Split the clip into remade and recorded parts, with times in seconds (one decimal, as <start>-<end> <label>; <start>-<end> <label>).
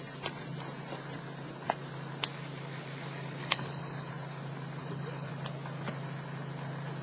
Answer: 0.0-3.4 recorded; 3.4-4.1 remade; 4.1-4.8 recorded; 4.8-5.3 remade; 5.3-7.0 recorded